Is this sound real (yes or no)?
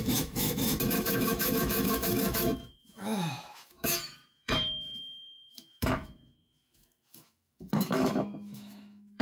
no